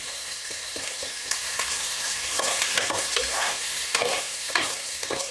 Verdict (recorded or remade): remade